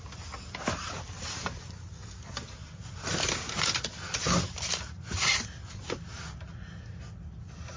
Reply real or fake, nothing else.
real